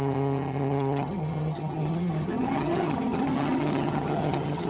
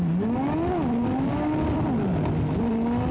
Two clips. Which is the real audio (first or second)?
second